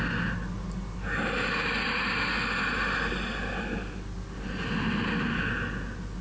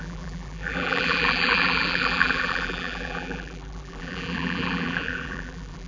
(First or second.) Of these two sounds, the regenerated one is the second